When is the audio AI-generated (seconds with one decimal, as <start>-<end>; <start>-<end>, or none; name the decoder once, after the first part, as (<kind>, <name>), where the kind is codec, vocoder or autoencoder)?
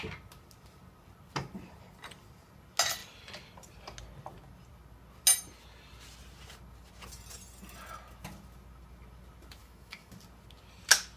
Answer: 9.6-10.1 (autoencoder, DAC-VAE)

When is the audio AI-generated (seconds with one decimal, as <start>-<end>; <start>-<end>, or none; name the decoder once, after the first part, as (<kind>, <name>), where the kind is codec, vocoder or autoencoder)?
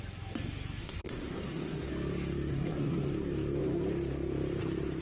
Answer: 0.8-1.9 (codec, SNAC); 2.5-3.1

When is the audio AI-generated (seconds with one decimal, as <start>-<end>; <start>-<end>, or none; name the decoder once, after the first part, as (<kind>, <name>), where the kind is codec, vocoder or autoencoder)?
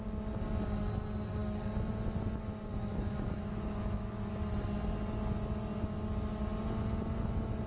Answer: 2.7-4.1 (autoencoder, DAC-VAE)